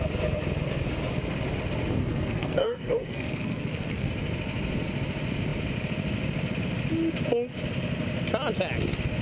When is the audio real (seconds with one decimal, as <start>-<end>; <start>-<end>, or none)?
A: 0.0-2.0; 4.1-9.2